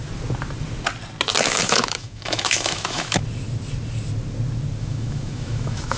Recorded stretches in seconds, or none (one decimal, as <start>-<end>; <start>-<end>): 0.0-1.4; 3.2-4.8